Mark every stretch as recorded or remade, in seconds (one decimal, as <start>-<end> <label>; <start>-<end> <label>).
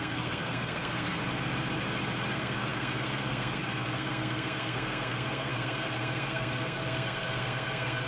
0.0-1.2 remade; 1.2-2.3 recorded; 2.3-8.1 remade